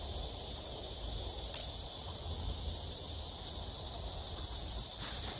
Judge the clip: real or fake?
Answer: real